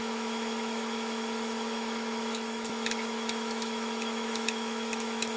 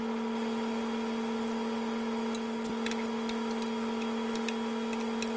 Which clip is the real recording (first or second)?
second